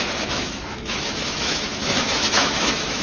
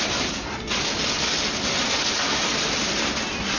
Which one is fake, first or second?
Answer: first